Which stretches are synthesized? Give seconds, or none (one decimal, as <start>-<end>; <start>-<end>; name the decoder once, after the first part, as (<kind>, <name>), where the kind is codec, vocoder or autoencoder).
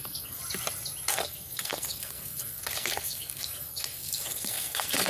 0.0-0.4 (codec, SNAC); 1.1-5.1